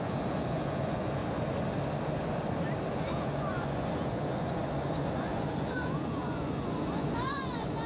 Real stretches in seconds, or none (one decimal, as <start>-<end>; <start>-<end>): 1.2-2.9